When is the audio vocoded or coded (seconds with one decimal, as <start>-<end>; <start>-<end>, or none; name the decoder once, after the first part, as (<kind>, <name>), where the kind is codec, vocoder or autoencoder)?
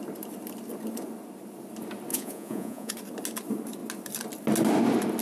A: 2.1-2.9 (vocoder, Vocos)